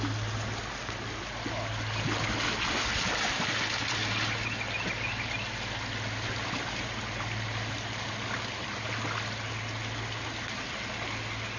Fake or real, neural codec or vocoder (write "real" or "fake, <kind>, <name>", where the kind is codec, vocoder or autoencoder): real